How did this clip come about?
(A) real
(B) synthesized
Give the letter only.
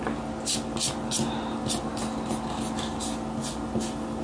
A